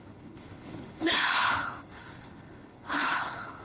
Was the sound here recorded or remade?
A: remade